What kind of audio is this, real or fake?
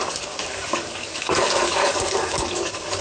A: fake